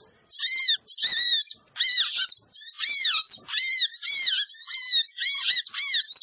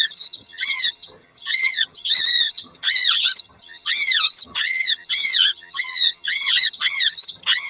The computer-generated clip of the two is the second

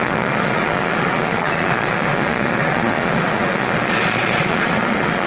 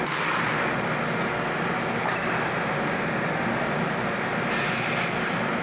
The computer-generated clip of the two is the first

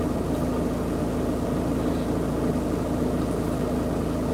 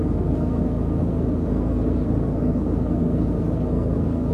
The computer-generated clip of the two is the second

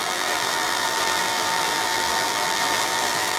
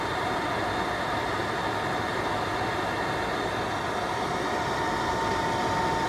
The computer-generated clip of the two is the first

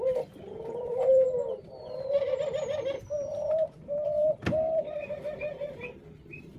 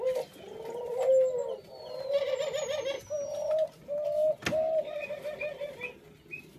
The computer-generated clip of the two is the first